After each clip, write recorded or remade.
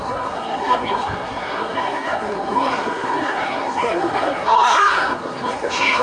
remade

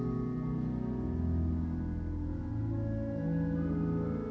recorded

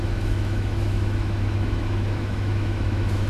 remade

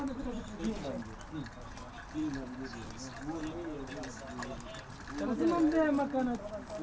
recorded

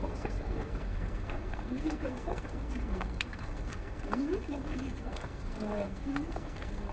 remade